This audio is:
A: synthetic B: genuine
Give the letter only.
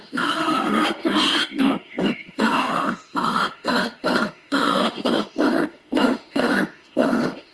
A